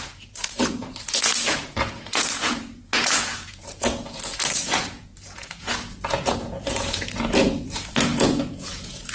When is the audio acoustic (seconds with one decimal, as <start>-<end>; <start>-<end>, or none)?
none